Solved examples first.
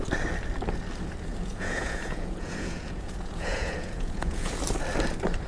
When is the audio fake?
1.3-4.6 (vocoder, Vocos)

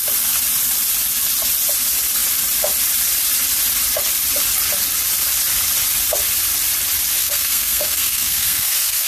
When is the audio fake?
7.2-9.1 (codec, SNAC)

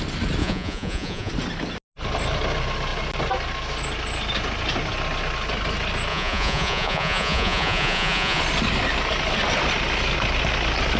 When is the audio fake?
0.4-1.3 (vocoder, Vocos); 6.1-8.4